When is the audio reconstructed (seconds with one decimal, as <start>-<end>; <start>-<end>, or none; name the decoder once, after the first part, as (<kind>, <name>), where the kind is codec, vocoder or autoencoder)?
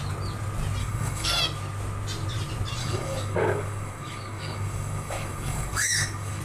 0.8-1.4 (codec, DAC); 2.8-6.4